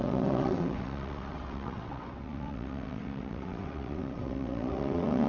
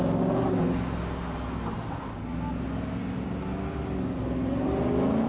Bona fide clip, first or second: second